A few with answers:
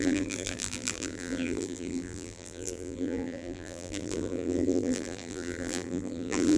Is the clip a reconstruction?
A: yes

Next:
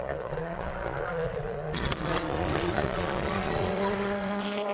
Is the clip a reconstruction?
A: yes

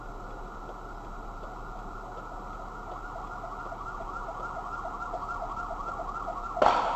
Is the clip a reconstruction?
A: no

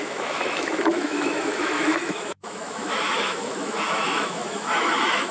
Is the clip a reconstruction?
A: yes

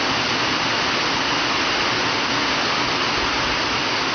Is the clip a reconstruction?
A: no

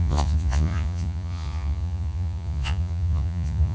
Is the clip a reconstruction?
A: yes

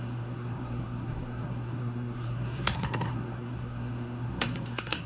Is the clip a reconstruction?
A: yes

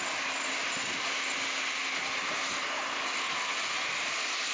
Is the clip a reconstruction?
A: no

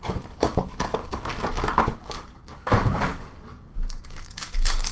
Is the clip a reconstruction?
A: yes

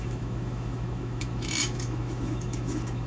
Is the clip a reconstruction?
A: yes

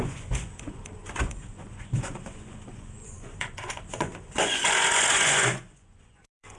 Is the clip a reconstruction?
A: yes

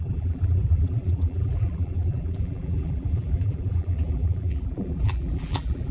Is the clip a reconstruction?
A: yes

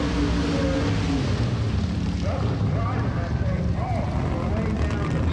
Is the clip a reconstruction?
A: no